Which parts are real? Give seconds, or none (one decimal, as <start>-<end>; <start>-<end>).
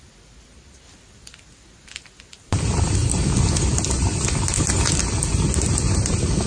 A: 0.0-6.5